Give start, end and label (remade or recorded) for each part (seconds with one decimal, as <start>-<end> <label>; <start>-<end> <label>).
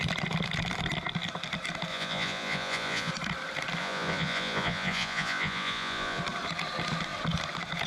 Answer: 0.0-1.9 recorded; 1.9-3.1 remade; 3.1-3.8 recorded; 3.8-6.2 remade; 6.2-7.9 recorded